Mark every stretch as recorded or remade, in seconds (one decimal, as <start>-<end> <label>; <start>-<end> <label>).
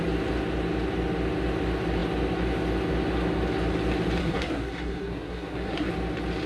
0.0-4.2 recorded; 4.2-5.9 remade; 5.9-6.5 recorded